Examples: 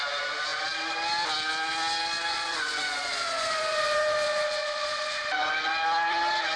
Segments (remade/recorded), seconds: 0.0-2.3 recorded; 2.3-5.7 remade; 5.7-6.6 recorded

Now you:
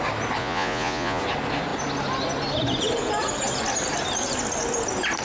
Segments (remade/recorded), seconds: 0.0-0.4 recorded; 0.4-1.2 remade; 1.2-5.2 recorded

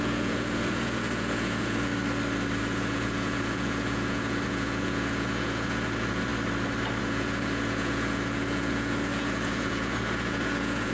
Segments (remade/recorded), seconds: 0.0-1.9 remade; 1.9-2.6 recorded; 2.6-6.3 remade; 6.3-7.0 recorded; 7.0-10.9 remade